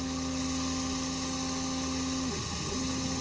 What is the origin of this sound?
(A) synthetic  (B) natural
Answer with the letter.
B